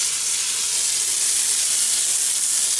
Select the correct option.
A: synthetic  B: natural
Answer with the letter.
B